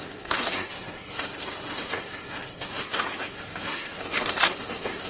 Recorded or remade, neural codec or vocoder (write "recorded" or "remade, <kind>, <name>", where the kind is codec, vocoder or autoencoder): remade, codec, SNAC